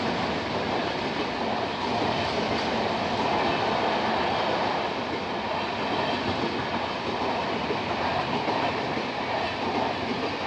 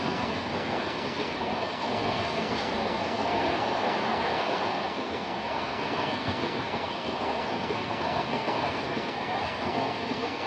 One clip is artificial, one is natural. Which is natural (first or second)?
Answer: first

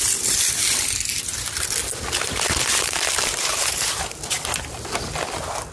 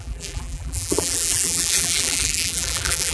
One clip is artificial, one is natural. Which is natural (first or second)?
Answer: first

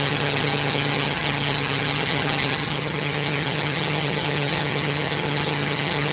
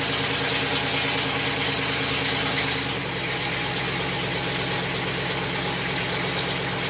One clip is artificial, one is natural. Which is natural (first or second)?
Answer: second